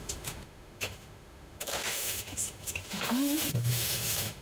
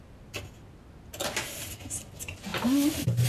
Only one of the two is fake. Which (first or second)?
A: first